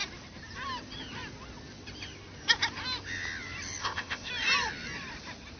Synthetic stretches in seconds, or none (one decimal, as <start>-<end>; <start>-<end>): 3.8-4.3